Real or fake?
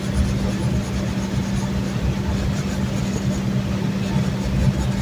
real